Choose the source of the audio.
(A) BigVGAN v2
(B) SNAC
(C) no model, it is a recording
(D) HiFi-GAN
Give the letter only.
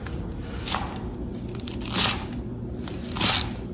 C